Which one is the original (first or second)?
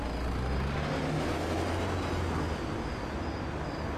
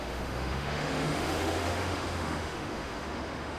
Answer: first